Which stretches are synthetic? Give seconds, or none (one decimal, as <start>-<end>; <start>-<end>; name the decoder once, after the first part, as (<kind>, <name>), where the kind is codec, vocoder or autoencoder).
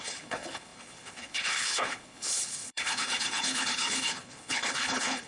0.0-5.3 (codec, HILCodec)